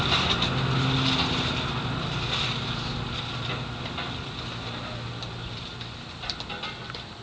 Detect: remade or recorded recorded